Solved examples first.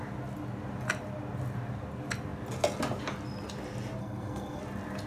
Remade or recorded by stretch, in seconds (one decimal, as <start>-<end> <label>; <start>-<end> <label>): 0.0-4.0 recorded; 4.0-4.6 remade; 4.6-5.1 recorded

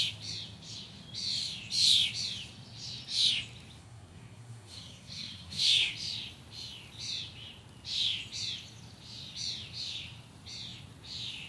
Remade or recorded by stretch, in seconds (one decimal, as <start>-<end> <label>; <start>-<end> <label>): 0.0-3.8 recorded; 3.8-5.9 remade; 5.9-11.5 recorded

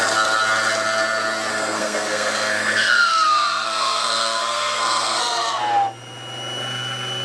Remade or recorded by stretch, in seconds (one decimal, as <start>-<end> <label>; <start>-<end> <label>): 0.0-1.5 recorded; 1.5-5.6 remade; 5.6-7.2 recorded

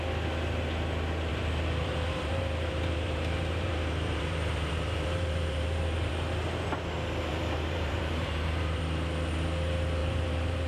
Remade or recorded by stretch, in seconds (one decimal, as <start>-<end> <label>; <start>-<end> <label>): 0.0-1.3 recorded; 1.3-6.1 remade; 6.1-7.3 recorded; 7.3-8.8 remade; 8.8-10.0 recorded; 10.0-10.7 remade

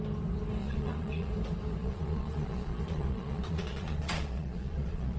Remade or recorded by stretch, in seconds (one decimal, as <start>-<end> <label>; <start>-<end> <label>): 0.0-0.6 recorded; 0.6-1.3 remade; 1.3-1.8 recorded; 1.8-5.2 remade

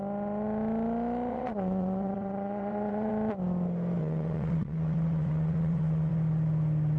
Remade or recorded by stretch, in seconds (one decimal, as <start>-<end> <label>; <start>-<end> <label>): 0.0-1.3 recorded; 1.3-3.1 remade; 3.1-4.0 recorded; 4.0-6.1 remade; 6.1-7.0 recorded

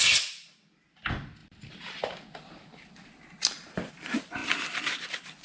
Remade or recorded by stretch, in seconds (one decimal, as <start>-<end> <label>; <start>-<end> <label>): 0.0-4.4 remade; 4.4-5.4 recorded